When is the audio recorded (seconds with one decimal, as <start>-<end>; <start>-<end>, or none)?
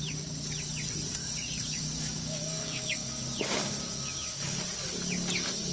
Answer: 0.0-1.2; 4.6-5.7